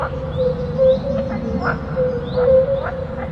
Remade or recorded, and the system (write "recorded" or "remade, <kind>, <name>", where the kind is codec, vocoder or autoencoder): recorded